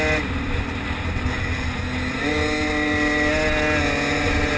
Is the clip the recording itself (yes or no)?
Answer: yes